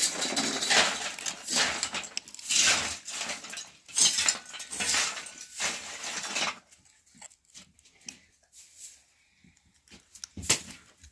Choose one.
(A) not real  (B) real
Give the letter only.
B